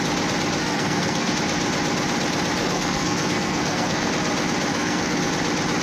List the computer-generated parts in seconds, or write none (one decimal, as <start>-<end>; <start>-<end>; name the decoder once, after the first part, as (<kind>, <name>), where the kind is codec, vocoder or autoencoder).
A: 0.6-1.3 (codec, SNAC); 2.6-4.1; 4.7-5.3